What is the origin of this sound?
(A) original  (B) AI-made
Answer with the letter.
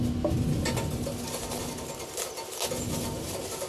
A